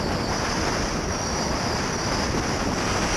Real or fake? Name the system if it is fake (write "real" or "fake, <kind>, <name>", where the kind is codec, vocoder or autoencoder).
real